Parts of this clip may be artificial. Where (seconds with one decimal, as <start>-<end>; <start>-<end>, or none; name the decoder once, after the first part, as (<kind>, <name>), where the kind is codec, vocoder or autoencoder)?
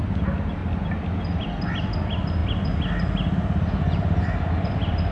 none